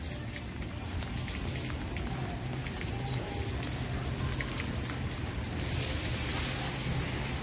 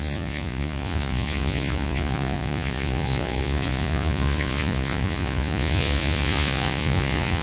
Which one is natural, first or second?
first